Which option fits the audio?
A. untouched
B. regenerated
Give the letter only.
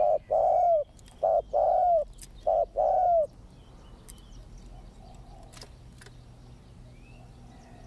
A